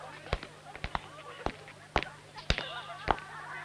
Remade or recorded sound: recorded